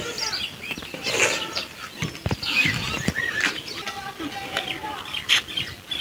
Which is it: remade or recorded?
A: recorded